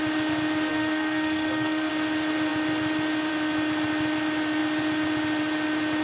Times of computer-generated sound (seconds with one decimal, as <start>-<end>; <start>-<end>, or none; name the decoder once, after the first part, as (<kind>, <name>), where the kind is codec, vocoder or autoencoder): 0.7-1.9 (codec, SNAC)